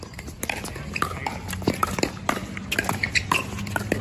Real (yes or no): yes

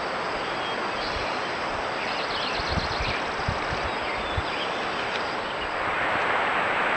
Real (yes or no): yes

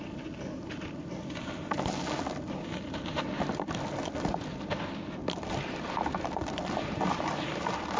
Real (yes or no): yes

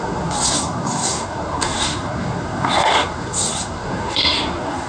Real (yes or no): no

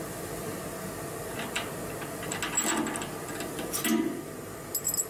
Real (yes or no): yes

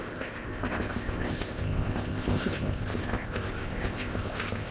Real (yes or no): no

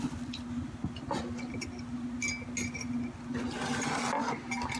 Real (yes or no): yes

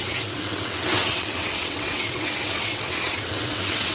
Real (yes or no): no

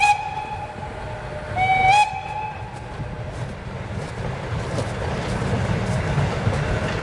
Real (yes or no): yes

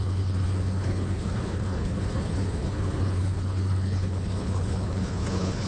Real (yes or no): no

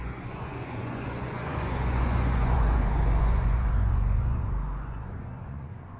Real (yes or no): no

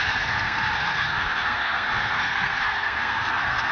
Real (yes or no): no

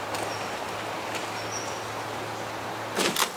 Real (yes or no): yes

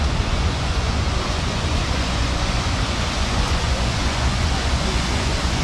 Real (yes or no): no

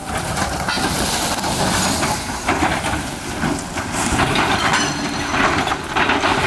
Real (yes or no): yes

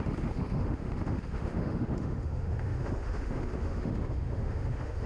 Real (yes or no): no